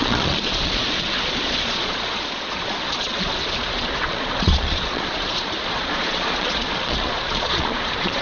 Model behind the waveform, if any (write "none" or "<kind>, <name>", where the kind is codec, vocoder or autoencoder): vocoder, Vocos